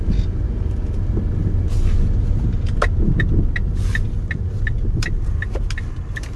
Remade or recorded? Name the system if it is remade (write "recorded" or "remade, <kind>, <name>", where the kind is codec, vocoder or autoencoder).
recorded